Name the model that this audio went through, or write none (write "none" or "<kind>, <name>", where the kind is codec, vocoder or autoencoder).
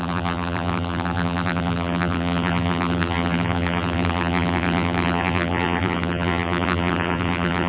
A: vocoder, BigVGAN v2